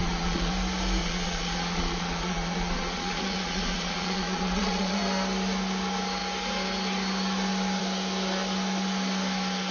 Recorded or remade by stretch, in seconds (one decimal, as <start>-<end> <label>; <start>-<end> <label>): 0.0-0.5 remade; 0.5-1.0 recorded; 1.0-5.0 remade; 5.0-9.7 recorded